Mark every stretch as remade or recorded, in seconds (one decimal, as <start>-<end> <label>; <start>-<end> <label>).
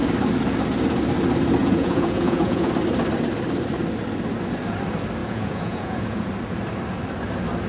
0.0-1.6 recorded; 1.6-2.7 remade; 2.7-5.2 recorded; 5.2-6.3 remade; 6.3-7.7 recorded